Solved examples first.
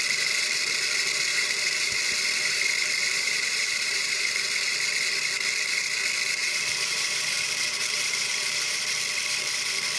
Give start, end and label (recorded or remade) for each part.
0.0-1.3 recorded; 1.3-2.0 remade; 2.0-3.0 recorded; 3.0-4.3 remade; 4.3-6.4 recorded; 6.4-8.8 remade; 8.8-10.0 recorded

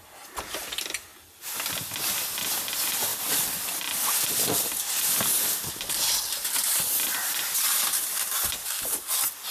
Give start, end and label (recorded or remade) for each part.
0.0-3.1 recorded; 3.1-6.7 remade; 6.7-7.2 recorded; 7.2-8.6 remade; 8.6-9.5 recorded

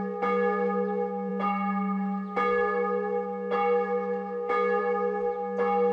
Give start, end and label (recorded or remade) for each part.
0.0-5.9 recorded